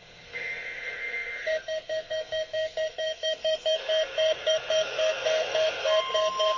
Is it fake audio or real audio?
fake